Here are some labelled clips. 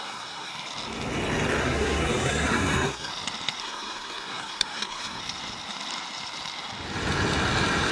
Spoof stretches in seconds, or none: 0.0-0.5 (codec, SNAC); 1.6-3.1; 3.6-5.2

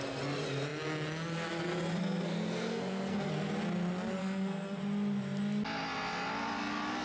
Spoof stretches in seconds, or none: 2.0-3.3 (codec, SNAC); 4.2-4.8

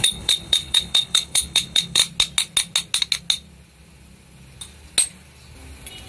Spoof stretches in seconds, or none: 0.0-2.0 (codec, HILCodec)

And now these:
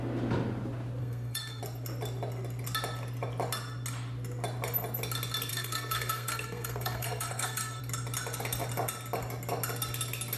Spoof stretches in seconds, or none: 1.0-1.6 (codec, SNAC); 5.5-7.8

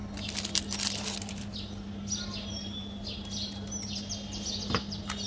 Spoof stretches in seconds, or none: none